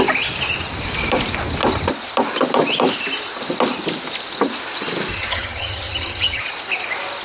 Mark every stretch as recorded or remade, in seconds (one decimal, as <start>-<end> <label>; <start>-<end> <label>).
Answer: 0.0-5.1 recorded; 5.1-6.4 remade; 6.4-7.2 recorded